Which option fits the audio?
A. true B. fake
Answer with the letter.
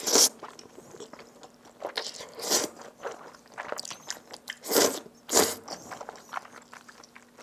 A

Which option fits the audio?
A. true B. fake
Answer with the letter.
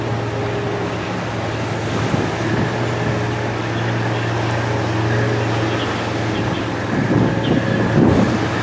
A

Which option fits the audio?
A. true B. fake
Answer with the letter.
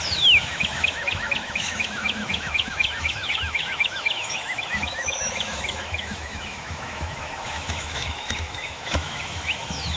B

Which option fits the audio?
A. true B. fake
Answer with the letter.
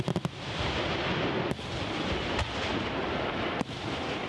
A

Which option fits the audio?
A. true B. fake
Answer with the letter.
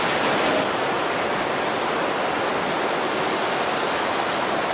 A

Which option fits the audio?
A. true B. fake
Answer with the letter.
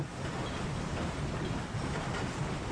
A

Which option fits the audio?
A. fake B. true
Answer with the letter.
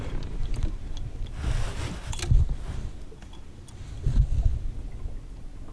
B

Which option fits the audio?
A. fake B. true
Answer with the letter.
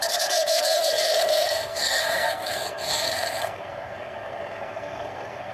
A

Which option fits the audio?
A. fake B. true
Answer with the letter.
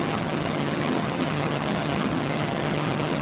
A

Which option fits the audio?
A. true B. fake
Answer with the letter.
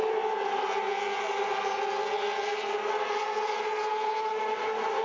A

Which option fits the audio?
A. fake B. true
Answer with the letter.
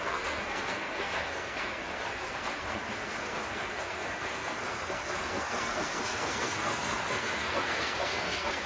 A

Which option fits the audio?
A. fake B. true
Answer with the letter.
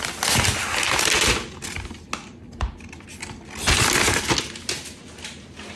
B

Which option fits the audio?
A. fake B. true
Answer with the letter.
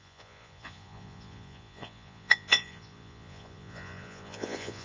A